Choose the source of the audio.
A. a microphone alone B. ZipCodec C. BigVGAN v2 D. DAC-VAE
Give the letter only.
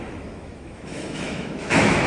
D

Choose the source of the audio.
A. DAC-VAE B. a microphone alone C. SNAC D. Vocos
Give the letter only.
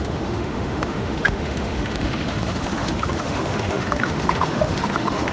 A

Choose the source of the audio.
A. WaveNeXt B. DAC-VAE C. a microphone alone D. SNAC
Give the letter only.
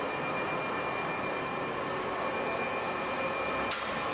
C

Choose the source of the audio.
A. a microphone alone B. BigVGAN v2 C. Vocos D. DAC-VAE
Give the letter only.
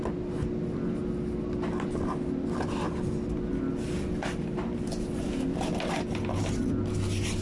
A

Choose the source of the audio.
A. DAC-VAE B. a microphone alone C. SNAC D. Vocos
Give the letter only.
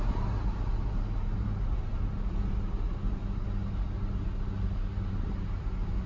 B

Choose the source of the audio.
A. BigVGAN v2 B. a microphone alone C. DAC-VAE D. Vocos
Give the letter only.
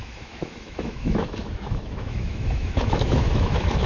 C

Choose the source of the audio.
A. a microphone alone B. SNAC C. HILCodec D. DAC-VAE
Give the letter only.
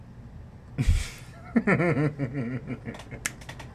A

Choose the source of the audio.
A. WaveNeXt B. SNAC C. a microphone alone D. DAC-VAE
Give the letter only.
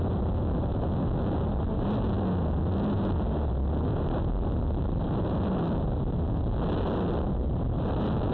C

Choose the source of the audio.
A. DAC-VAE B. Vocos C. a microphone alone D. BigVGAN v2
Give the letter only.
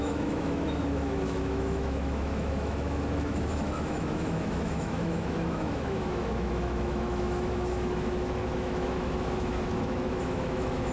A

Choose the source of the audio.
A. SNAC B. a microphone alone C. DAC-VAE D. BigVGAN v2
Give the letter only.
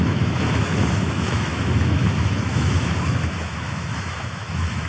C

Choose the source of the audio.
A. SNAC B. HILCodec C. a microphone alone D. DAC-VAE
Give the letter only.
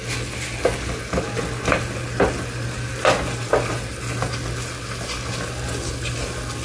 C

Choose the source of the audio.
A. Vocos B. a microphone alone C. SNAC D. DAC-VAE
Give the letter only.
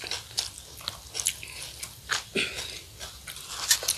B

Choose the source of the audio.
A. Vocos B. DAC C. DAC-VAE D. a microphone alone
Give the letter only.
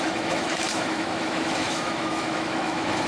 C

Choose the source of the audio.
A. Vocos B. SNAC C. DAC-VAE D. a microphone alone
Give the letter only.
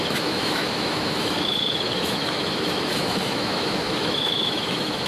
C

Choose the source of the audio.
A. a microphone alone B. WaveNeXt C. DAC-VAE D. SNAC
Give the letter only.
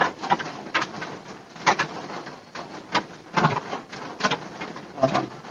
A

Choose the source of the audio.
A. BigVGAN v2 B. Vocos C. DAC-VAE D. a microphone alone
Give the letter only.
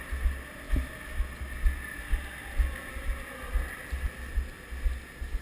D